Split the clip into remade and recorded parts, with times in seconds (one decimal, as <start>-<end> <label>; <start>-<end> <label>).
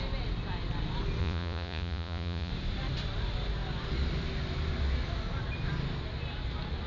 0.0-1.2 recorded; 1.2-2.5 remade; 2.5-6.9 recorded